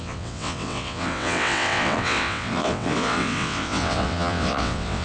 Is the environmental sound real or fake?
fake